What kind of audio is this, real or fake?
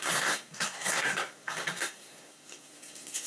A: fake